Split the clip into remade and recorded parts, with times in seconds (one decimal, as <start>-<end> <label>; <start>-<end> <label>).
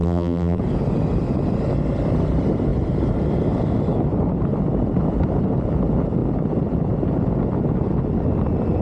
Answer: 0.0-0.6 remade; 0.6-8.8 recorded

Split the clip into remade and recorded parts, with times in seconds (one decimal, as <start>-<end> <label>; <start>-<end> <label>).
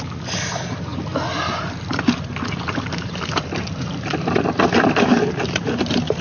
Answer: 0.0-6.2 recorded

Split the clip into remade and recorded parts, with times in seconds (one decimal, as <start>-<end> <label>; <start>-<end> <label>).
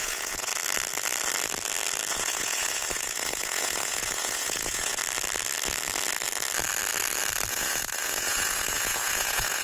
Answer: 0.0-0.5 remade; 0.5-2.1 recorded; 2.1-5.0 remade; 5.0-7.5 recorded; 7.5-9.6 remade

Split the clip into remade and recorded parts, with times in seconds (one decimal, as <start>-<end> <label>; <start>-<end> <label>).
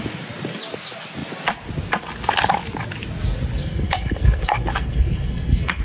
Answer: 0.0-3.6 recorded; 3.6-5.8 remade